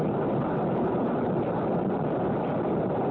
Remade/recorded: recorded